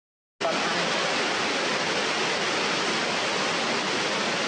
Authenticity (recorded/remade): recorded